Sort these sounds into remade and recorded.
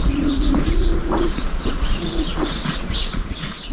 remade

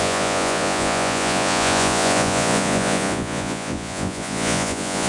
remade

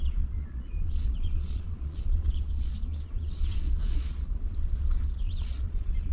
remade